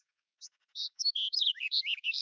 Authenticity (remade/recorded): remade